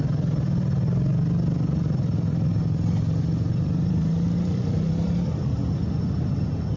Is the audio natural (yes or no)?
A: yes